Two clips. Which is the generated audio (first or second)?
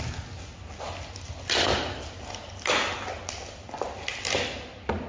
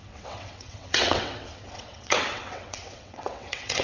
second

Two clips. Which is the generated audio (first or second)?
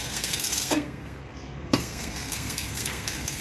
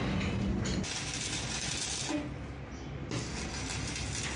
first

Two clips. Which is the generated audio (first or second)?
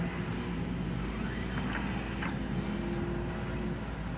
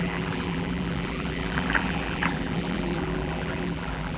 second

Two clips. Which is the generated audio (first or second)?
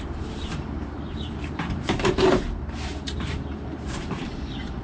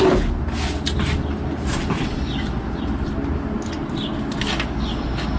first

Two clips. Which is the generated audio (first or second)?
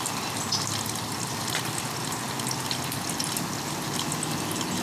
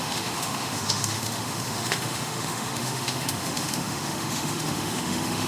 second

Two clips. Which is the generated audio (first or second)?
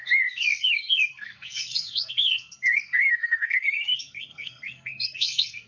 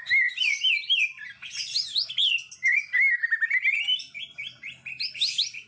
first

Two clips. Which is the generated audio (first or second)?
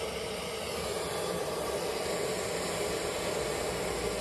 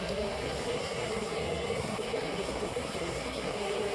second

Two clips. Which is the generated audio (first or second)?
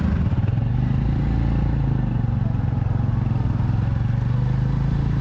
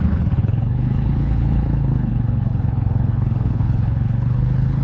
second